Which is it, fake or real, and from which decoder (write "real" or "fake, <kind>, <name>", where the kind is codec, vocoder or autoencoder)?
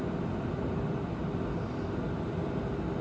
real